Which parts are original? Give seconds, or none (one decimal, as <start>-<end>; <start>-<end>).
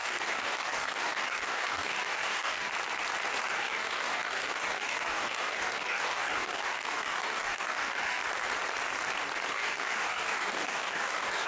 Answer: 2.7-3.4; 8.2-9.5